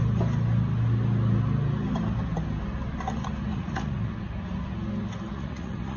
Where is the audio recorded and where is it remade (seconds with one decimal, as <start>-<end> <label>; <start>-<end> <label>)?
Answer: 0.0-3.5 recorded; 3.5-4.2 remade; 4.2-5.3 recorded; 5.3-6.0 remade